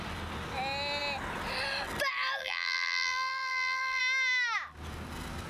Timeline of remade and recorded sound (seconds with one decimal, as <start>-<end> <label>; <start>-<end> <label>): 0.0-2.4 recorded; 2.4-4.0 remade; 4.0-5.5 recorded